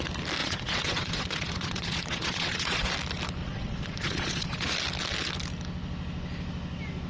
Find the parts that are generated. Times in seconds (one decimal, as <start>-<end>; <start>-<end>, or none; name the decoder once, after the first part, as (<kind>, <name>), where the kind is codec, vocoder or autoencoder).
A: 0.4-2.9 (vocoder, Vocos); 3.4-4.7